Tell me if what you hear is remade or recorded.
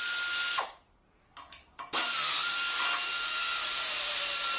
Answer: recorded